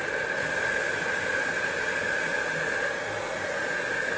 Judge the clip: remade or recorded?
recorded